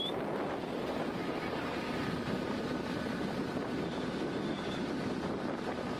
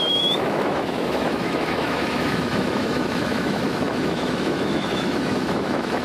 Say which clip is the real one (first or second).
first